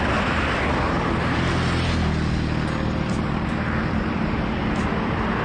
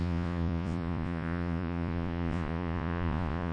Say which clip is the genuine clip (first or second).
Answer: first